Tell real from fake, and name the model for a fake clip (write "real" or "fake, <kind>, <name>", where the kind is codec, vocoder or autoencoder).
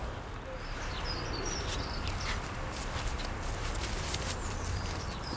real